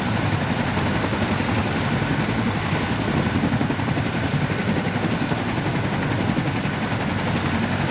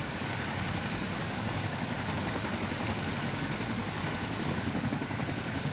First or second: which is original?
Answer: first